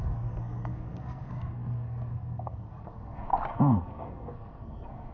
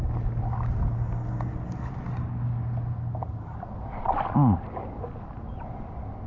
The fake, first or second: first